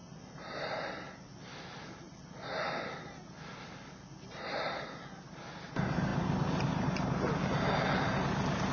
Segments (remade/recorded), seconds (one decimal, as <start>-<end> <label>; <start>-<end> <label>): 0.0-8.7 recorded